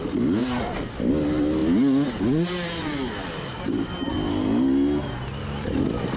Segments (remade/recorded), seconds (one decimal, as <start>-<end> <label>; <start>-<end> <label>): 0.0-6.2 recorded